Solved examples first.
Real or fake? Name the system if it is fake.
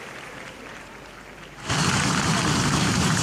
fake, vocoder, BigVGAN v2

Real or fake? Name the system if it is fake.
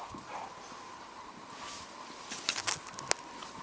real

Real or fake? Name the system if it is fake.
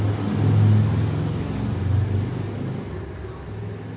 real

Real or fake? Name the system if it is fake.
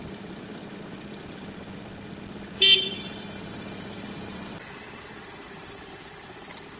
fake, vocoder, BigVGAN v2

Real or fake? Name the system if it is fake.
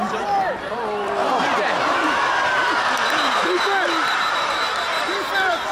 fake, vocoder, BigVGAN v2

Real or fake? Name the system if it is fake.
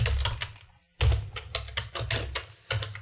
real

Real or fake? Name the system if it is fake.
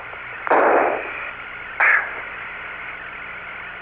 fake, vocoder, BigVGAN v2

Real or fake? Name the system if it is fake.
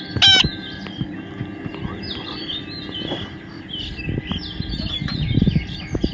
real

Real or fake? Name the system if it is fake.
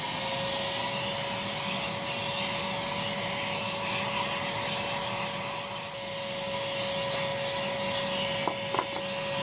real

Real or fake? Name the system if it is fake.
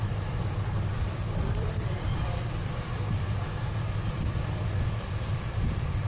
fake, vocoder, BigVGAN v2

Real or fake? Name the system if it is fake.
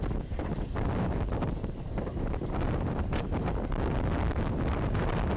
fake, vocoder, BigVGAN v2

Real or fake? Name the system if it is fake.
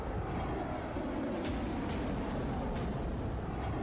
real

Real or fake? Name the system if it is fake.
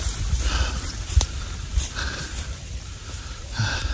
fake, vocoder, BigVGAN v2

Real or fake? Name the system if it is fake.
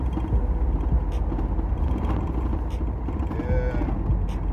real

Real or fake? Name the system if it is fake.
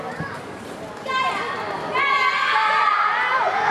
fake, vocoder, BigVGAN v2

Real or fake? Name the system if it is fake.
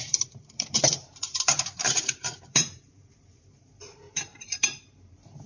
fake, vocoder, BigVGAN v2